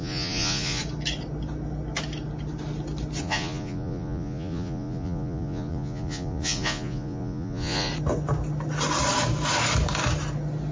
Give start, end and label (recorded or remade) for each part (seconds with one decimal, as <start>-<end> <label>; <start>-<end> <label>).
0.0-0.8 remade; 0.8-3.2 recorded; 3.2-7.9 remade; 7.9-10.7 recorded

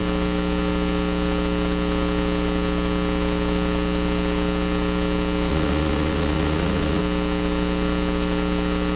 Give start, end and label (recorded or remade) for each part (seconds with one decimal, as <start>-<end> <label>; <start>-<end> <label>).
0.0-5.5 recorded; 5.5-7.0 remade; 7.0-9.0 recorded

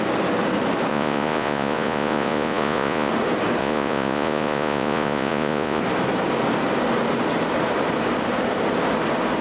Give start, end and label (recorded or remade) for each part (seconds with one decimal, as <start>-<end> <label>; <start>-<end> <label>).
0.0-0.9 recorded; 0.9-3.1 remade; 3.1-3.6 recorded; 3.6-5.8 remade; 5.8-9.4 recorded

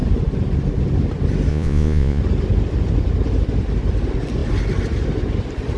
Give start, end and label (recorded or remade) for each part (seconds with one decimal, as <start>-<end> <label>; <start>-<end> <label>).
0.0-1.5 recorded; 1.5-2.2 remade; 2.2-5.8 recorded

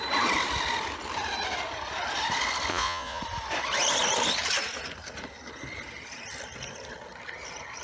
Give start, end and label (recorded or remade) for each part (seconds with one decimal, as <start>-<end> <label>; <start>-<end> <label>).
0.0-2.7 recorded; 2.7-3.2 remade; 3.2-7.8 recorded